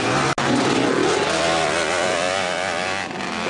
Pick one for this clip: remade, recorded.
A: recorded